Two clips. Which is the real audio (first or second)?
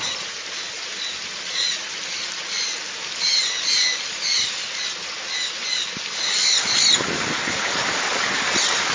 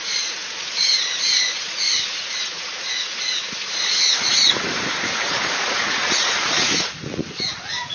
first